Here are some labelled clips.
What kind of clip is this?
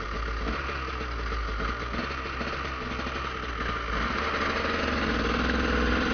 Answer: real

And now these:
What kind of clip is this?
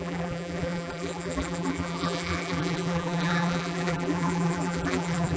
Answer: fake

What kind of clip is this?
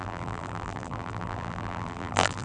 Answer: fake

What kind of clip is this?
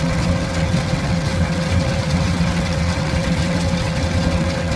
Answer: fake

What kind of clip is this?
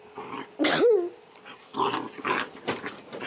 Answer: real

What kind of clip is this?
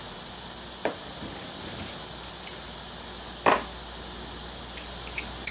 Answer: real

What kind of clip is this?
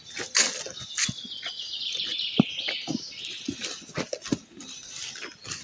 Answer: real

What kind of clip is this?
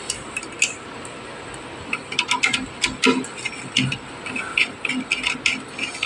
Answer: real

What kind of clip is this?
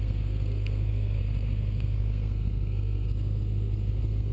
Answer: fake